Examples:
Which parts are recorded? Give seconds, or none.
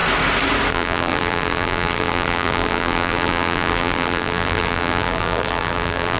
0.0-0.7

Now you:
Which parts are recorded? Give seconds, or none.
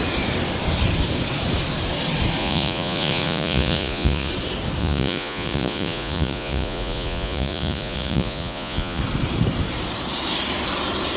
0.0-2.4; 4.3-4.8; 9.0-11.2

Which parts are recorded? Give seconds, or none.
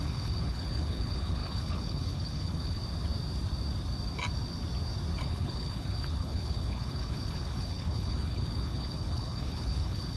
2.8-5.2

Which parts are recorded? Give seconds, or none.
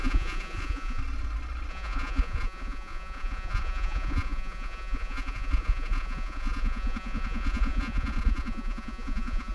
1.0-1.7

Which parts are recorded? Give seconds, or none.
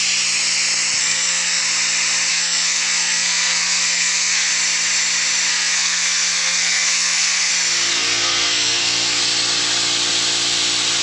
0.0-1.0; 1.6-2.3; 4.5-5.5; 7.5-7.9; 9.2-11.0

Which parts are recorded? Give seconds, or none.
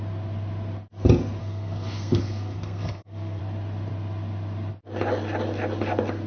0.0-1.4; 3.4-6.3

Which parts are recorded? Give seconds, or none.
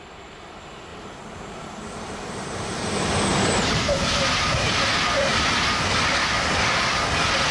0.0-0.9; 2.9-3.3; 3.8-7.5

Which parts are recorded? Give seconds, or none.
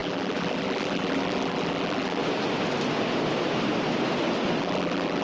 2.2-4.6